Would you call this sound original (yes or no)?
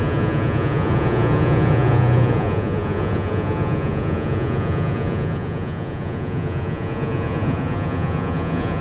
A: no